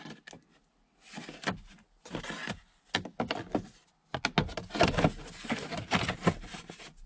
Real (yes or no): yes